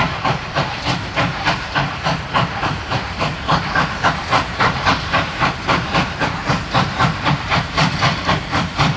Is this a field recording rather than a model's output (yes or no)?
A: no